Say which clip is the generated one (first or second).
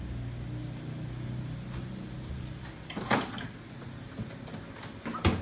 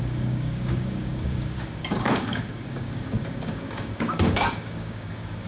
second